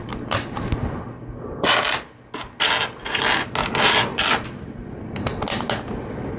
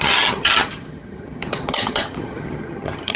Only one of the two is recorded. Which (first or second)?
first